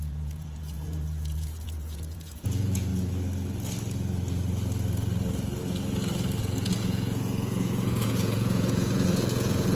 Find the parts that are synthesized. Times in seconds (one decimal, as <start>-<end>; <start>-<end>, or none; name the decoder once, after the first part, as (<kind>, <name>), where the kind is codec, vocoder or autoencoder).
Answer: 0.0-2.9 (vocoder, Vocos); 6.4-9.7